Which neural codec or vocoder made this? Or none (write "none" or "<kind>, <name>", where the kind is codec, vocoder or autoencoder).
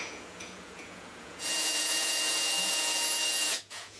vocoder, Vocos